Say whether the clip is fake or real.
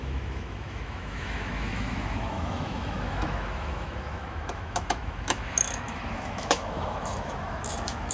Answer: fake